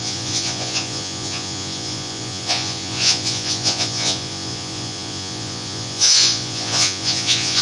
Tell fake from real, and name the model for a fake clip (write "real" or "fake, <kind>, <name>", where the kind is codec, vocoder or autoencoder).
fake, vocoder, Vocos